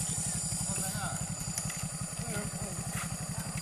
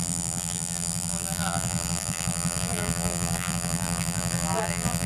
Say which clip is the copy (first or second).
second